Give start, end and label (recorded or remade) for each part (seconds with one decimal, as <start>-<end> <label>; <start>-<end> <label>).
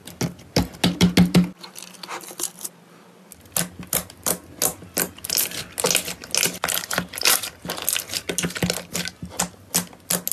0.0-10.3 recorded